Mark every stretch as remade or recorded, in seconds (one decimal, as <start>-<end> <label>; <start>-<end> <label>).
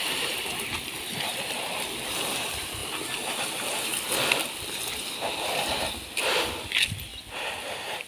0.0-2.8 remade; 2.8-3.9 recorded; 3.9-7.1 remade; 7.1-8.1 recorded